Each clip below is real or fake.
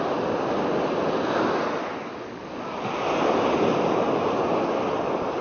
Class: real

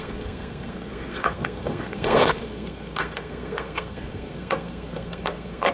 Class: fake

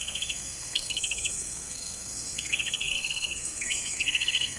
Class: fake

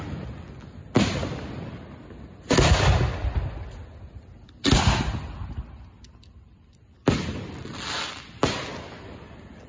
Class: real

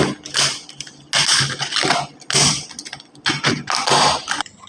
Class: real